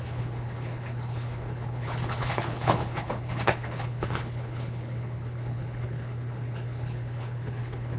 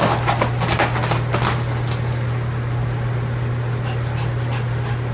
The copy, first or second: first